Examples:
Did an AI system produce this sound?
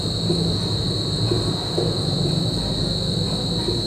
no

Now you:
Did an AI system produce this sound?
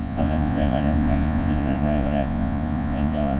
yes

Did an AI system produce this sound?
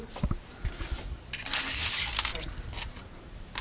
no